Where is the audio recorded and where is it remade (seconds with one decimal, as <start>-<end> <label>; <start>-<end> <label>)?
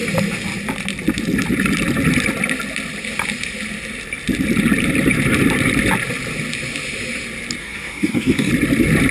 0.0-7.6 recorded; 7.6-8.5 remade; 8.5-9.1 recorded